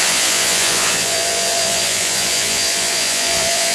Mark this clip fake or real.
fake